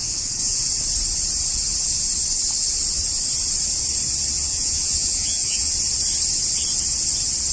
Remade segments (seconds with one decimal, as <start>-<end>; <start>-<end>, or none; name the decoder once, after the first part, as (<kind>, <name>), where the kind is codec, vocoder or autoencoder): 0.0-0.6 (vocoder, Vocos); 4.5-5.7